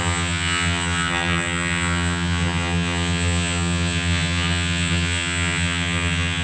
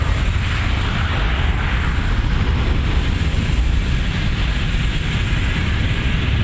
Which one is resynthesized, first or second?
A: first